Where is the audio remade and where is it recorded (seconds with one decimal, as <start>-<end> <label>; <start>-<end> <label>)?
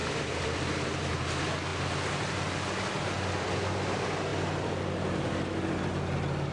0.0-1.0 remade; 1.0-6.5 recorded